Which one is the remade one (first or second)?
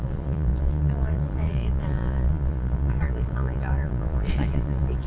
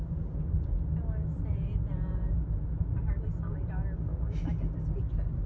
first